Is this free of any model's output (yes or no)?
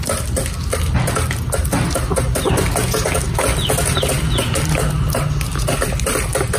yes